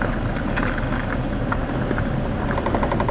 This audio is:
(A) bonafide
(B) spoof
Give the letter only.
A